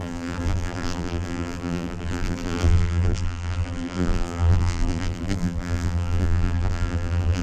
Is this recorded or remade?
remade